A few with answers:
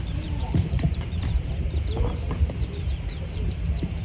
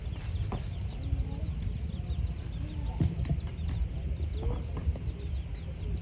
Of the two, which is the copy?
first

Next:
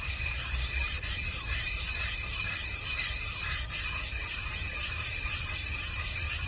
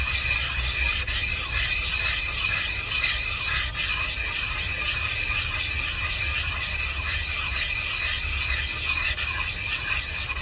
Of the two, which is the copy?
first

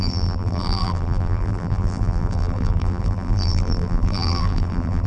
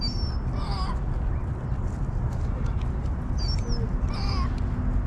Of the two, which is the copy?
first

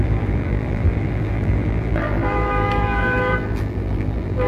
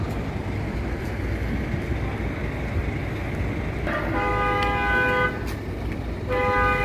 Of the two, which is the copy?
first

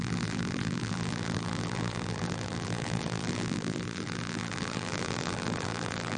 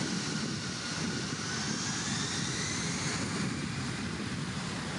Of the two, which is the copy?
first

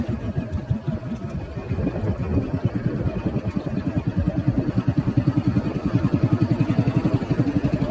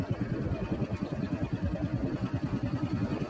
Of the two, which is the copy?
first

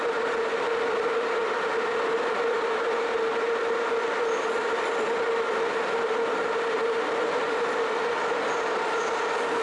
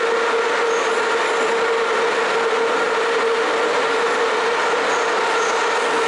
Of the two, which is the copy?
first